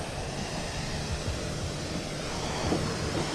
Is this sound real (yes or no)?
no